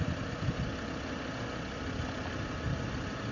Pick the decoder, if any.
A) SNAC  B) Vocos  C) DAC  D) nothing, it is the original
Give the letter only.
D